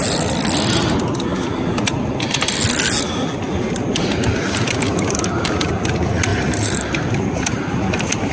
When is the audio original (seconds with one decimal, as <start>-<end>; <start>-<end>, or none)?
0.0-6.3; 7.9-8.3